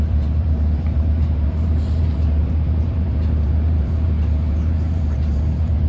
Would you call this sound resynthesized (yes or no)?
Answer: yes